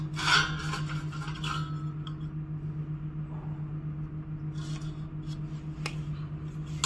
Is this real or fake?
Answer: real